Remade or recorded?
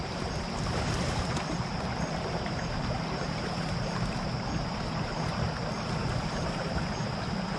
remade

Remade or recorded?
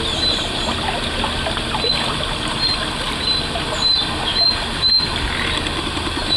recorded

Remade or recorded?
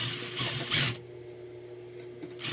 recorded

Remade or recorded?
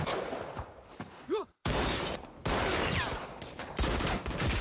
remade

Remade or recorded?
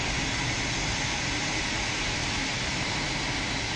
recorded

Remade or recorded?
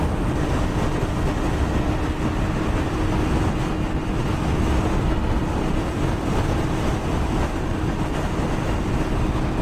recorded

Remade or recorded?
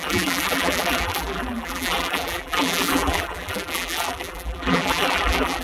remade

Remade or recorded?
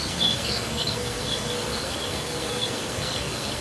remade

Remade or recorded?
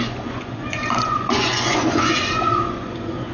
remade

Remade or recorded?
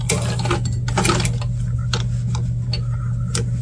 recorded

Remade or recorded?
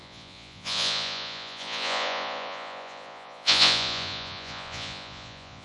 remade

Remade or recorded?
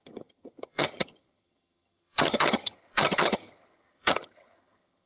remade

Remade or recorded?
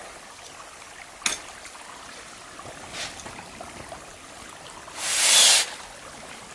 recorded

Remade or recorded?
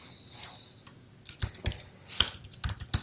recorded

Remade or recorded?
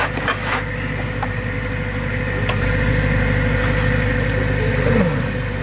recorded